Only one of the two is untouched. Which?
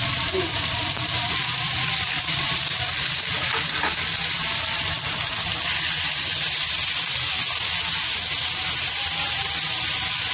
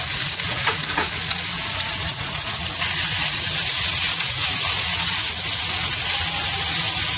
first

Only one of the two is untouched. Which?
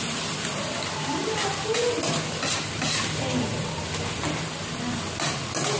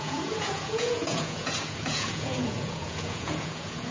first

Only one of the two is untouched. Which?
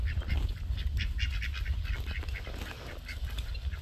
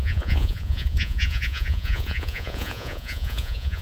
first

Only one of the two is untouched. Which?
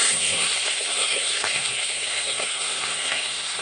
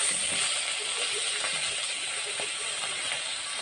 second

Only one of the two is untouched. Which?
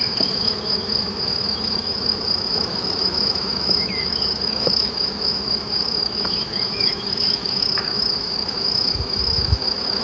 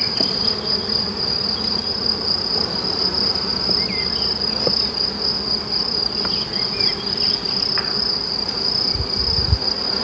second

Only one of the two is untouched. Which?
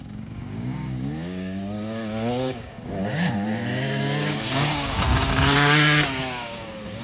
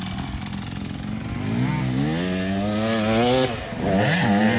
second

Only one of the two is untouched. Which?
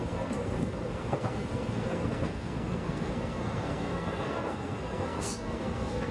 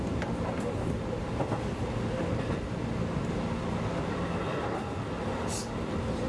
second